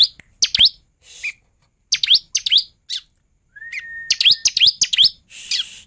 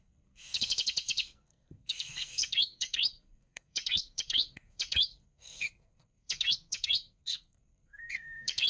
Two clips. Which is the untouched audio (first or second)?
first